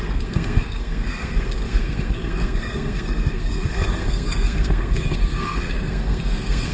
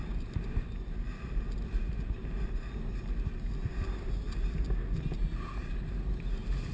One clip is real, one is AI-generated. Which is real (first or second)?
second